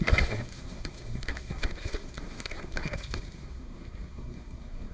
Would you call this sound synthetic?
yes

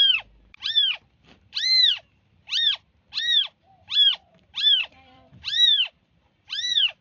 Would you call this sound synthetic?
yes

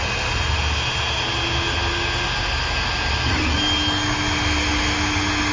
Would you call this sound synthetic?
no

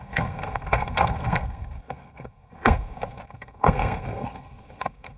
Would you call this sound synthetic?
yes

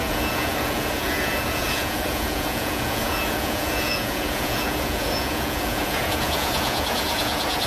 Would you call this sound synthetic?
yes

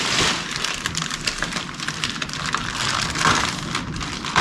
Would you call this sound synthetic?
no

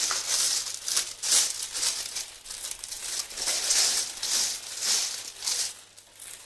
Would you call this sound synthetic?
no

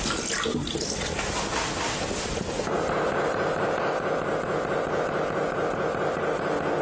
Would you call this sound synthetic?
no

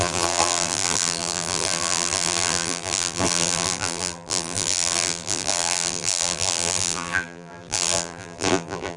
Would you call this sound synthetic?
yes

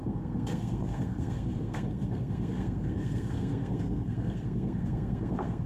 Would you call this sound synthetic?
yes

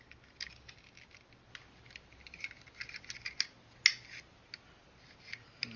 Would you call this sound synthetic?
no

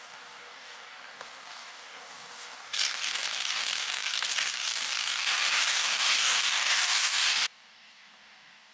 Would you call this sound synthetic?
yes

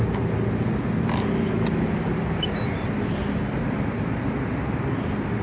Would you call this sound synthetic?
yes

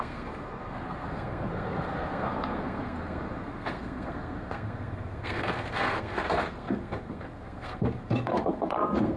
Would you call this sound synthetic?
yes